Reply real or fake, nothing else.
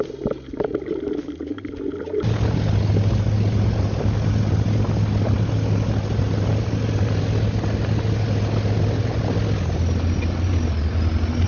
real